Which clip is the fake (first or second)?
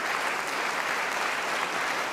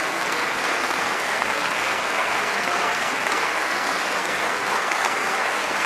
second